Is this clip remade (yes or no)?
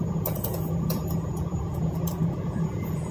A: yes